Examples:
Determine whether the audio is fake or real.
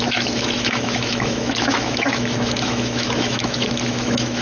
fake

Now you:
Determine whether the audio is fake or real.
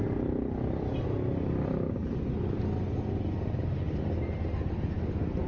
real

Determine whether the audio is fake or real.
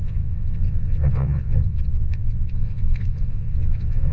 fake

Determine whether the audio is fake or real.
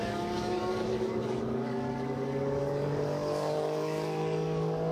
fake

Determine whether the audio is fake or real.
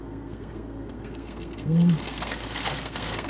fake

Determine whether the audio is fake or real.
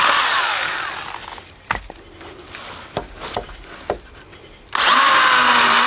real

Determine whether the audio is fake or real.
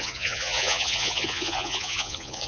fake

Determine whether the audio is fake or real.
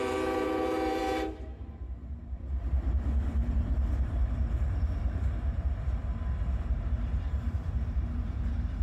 fake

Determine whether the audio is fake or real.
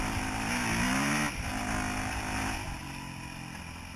real